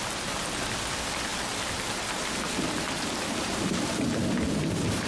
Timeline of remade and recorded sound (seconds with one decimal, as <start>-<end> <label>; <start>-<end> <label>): 0.0-5.1 recorded